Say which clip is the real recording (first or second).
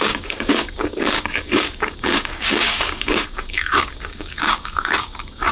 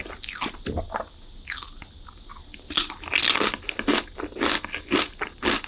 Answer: second